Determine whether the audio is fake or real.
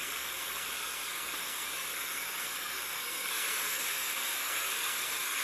fake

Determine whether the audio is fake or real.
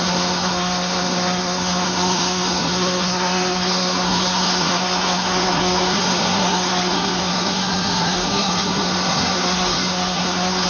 fake